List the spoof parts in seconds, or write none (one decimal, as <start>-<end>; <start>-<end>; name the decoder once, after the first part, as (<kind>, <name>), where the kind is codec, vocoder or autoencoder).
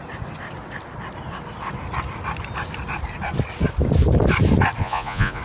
4.8-5.4 (vocoder, Vocos)